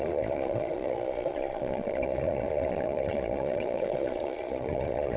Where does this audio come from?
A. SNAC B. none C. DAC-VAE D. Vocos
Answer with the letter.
D